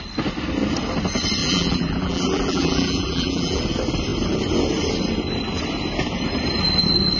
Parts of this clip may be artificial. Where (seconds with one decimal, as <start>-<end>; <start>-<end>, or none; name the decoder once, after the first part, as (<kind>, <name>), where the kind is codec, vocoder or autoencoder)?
1.4-3.6 (vocoder, BigVGAN v2)